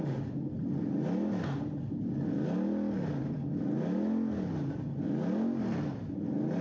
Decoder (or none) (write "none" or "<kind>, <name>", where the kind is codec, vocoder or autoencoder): none